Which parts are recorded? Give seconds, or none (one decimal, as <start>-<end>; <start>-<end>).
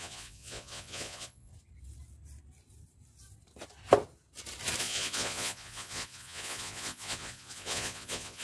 1.5-4.8